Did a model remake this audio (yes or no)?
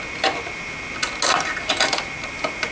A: no